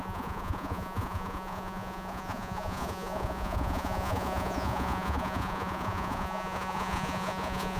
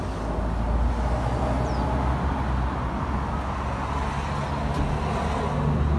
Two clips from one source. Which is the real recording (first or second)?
second